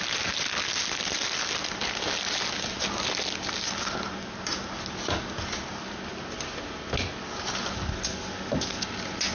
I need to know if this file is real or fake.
real